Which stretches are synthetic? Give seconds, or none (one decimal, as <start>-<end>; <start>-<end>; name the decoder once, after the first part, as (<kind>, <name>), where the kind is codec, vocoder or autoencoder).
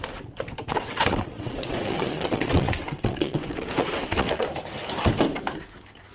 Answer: 0.7-4.4 (vocoder, WaveNeXt)